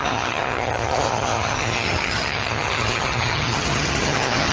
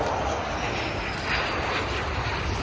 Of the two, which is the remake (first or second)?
first